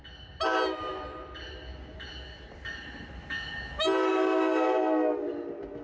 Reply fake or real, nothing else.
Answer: real